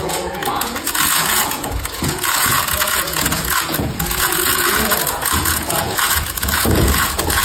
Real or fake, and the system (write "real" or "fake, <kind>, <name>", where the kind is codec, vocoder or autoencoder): fake, vocoder, Vocos